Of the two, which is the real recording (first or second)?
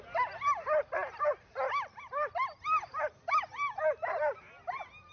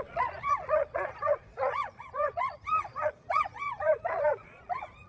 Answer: first